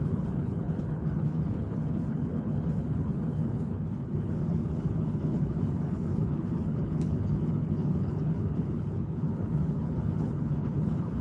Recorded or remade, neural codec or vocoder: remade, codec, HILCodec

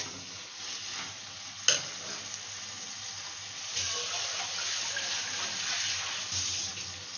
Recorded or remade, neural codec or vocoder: recorded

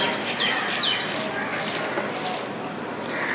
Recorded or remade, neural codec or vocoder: recorded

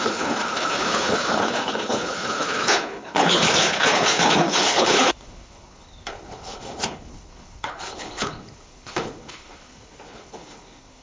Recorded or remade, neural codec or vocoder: remade, codec, HILCodec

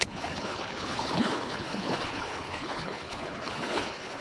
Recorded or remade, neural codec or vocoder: remade, codec, HILCodec